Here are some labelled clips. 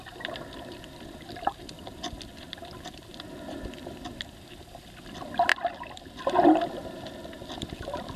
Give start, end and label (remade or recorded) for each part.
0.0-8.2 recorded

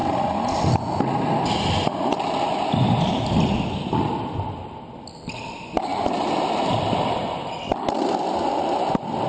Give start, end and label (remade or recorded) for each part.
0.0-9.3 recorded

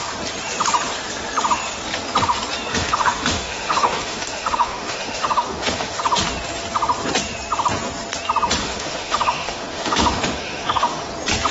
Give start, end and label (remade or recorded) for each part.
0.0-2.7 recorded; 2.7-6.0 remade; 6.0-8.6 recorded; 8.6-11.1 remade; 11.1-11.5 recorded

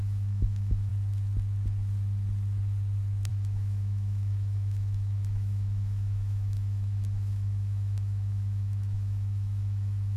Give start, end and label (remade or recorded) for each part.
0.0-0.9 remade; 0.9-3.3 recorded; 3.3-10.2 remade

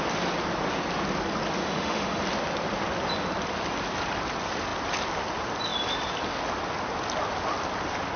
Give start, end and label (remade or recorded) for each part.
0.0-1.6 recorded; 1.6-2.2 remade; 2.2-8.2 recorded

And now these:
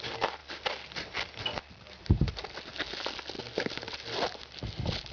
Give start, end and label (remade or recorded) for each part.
0.0-5.1 recorded

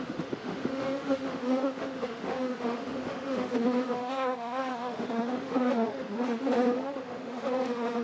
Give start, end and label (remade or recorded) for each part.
0.0-8.0 remade